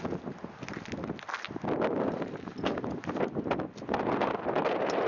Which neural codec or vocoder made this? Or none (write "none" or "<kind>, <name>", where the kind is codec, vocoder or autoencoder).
none